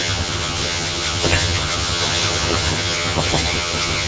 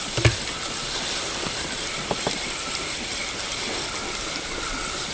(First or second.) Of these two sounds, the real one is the second